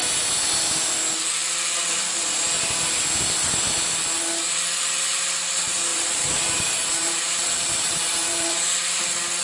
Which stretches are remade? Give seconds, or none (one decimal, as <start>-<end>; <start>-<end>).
5.9-8.9